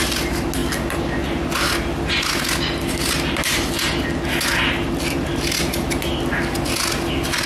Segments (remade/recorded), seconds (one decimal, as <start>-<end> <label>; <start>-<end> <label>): 0.0-7.5 recorded